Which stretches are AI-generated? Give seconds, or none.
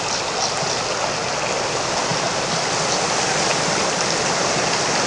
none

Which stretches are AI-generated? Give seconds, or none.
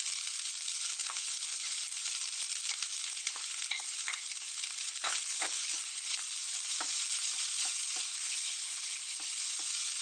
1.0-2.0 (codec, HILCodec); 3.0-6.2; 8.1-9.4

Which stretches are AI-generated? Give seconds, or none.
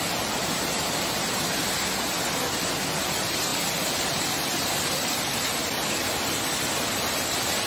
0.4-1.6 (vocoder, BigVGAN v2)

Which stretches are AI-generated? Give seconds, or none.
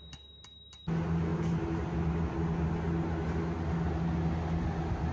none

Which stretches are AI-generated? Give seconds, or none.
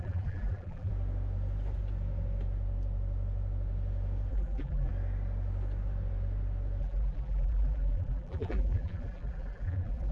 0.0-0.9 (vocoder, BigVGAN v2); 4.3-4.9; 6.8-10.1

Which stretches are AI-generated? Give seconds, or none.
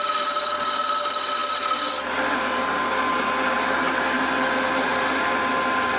none